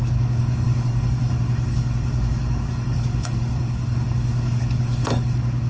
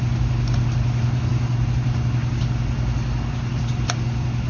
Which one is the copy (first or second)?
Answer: first